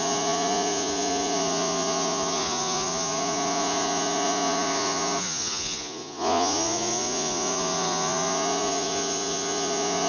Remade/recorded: remade